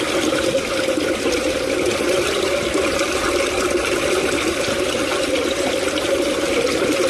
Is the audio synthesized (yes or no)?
no